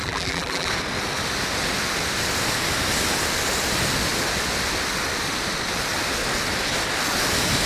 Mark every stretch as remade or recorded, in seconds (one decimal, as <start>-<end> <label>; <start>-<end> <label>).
0.0-0.7 remade; 0.7-7.7 recorded